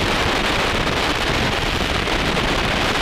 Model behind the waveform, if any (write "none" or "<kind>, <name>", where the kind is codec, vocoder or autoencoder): vocoder, BigVGAN v2